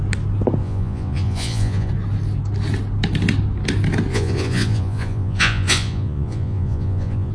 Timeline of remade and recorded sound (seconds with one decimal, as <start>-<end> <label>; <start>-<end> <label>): 0.0-0.6 recorded; 0.6-1.9 remade; 1.9-4.1 recorded; 4.1-7.3 remade